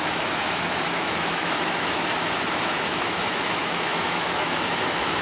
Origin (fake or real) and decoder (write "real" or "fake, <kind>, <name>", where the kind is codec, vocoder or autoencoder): fake, autoencoder, DAC-VAE